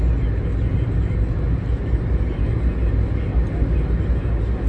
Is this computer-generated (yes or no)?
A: no